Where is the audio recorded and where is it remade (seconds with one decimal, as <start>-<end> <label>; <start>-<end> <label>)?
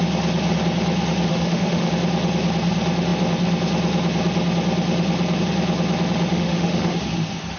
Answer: 0.0-1.3 recorded; 1.3-1.9 remade; 1.9-6.3 recorded; 6.3-7.0 remade; 7.0-7.6 recorded